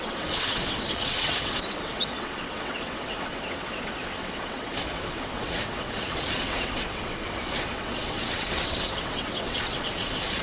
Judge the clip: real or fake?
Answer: fake